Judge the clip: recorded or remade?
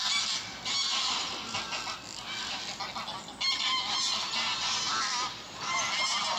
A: recorded